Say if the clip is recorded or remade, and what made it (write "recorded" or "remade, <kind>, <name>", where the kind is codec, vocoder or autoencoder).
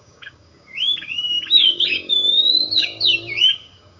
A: remade, codec, DAC